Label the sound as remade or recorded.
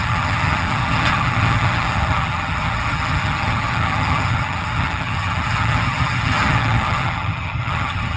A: remade